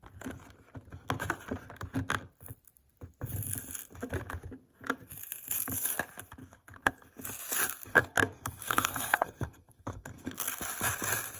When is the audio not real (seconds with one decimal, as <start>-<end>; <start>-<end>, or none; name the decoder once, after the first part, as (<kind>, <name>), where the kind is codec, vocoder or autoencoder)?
6.4-6.9 (codec, SNAC); 7.9-10.5